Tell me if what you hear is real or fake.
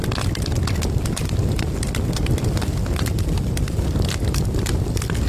real